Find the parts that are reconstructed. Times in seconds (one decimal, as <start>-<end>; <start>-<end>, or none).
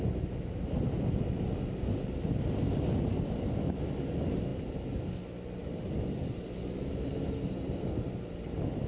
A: none